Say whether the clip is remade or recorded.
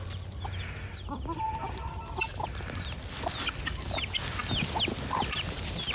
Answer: recorded